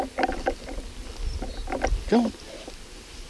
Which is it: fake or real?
real